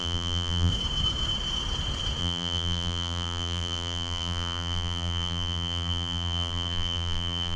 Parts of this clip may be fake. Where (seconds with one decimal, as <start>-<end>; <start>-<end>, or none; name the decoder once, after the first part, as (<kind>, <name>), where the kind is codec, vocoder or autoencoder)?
0.0-0.7 (vocoder, BigVGAN v2); 2.2-7.6